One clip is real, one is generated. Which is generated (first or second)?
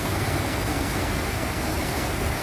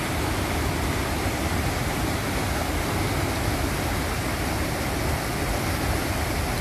first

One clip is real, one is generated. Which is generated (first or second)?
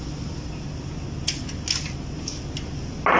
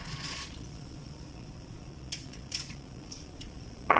second